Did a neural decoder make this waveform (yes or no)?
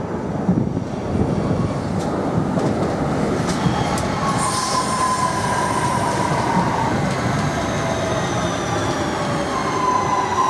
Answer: no